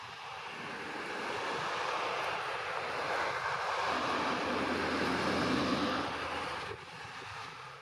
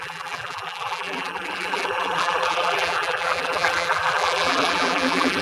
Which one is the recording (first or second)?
first